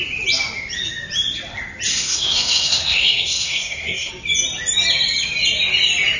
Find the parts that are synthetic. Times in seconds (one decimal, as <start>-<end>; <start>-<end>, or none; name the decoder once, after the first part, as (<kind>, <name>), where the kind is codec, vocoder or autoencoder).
1.9-4.1 (codec, SNAC)